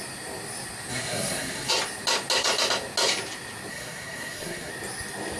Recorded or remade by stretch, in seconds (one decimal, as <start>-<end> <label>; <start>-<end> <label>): 0.0-0.9 recorded; 0.9-1.7 remade; 1.7-3.7 recorded; 3.7-4.7 remade; 4.7-5.4 recorded